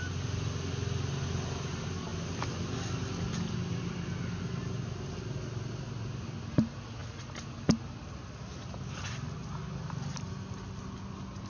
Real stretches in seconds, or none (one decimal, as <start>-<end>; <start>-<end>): 0.0-11.5